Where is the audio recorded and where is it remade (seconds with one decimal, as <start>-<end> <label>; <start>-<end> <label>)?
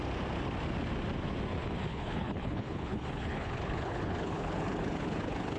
0.0-1.9 recorded; 1.9-5.6 remade